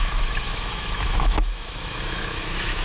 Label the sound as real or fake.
fake